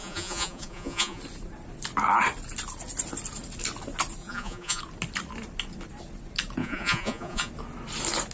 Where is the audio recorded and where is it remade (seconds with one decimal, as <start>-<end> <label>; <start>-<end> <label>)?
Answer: 0.0-1.2 remade; 1.2-4.2 recorded; 4.2-4.8 remade; 4.8-6.6 recorded; 6.6-7.5 remade; 7.5-8.3 recorded